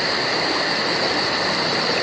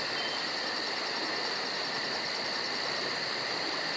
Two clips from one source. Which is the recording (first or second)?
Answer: second